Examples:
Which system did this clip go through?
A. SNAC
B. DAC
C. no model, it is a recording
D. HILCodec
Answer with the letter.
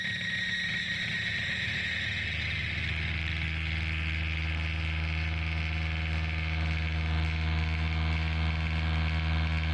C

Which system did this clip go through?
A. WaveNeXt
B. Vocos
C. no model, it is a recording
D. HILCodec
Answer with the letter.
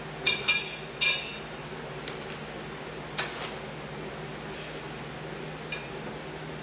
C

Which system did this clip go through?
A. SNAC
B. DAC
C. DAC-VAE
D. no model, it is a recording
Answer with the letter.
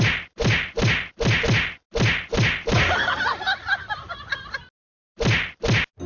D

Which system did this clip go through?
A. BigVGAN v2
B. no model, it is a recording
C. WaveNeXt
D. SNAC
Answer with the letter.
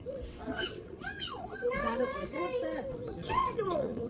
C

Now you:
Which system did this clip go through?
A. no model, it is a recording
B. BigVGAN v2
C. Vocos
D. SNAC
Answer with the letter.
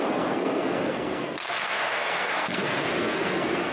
D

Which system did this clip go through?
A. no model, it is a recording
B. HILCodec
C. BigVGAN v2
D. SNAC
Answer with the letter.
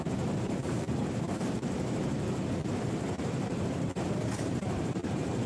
C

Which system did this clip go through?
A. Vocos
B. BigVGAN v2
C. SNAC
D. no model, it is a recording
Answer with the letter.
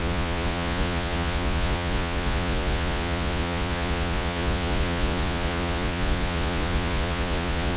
A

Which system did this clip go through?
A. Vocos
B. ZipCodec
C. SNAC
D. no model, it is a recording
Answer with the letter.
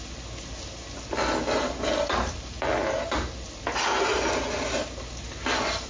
D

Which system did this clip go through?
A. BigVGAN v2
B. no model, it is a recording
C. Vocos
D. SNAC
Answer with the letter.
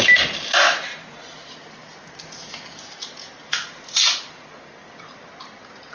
B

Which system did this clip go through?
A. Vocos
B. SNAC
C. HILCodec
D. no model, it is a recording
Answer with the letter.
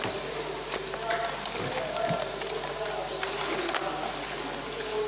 D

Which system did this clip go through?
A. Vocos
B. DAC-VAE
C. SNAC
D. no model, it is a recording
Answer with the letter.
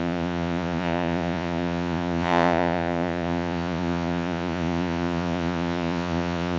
A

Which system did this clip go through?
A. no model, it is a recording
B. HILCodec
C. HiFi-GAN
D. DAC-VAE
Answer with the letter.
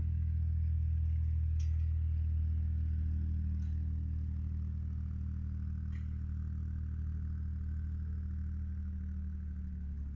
A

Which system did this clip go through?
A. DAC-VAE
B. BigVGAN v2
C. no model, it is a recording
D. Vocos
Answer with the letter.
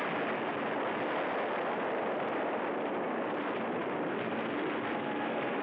C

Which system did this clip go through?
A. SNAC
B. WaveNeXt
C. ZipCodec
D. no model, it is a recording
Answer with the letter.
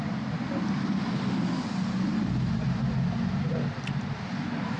D